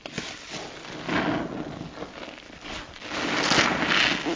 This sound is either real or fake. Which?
real